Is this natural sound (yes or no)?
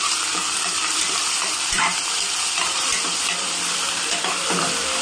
no